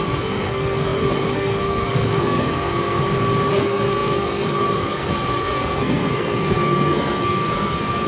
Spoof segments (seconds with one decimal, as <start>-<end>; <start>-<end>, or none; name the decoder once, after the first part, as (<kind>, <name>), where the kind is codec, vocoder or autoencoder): 0.0-3.0 (codec, SNAC); 3.5-8.1